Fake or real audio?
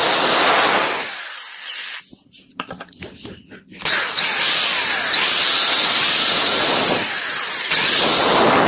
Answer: real